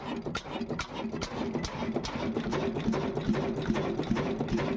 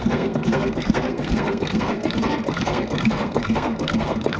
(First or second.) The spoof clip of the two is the second